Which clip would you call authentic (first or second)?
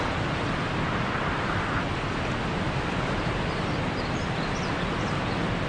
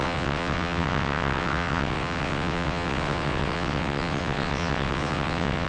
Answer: first